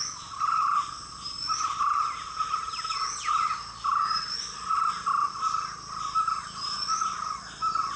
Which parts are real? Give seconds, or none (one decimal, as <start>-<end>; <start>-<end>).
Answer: 0.0-8.0